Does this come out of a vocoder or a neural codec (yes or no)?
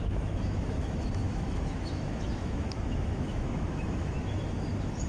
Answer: yes